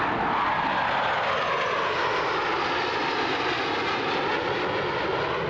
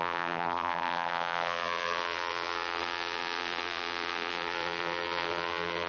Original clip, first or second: first